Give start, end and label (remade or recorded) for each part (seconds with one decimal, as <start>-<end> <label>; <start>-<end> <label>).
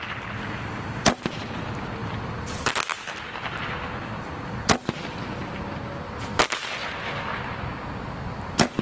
0.0-2.0 recorded; 2.0-3.3 remade; 3.3-8.8 recorded